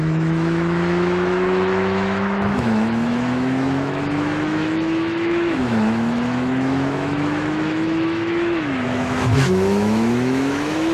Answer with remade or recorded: remade